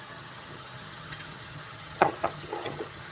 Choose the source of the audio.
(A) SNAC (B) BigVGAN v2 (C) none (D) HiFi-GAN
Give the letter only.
D